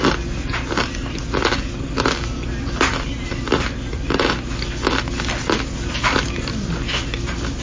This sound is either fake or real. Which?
real